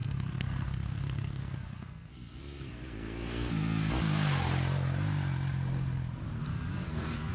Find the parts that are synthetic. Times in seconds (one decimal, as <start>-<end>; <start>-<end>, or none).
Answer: 0.0-3.9; 6.5-7.3